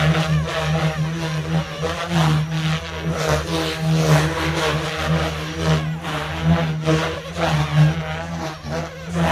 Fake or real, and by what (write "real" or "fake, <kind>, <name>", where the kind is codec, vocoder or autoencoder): real